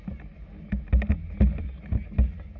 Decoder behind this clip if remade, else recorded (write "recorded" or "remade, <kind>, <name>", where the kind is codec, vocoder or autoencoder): recorded